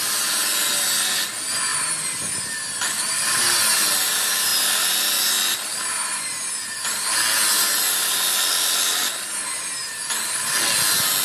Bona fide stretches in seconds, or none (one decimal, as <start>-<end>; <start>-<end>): 0.0-11.2